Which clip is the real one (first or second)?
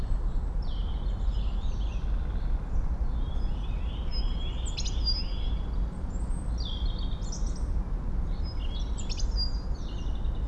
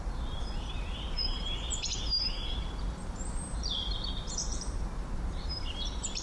first